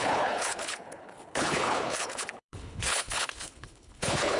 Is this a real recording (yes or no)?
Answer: no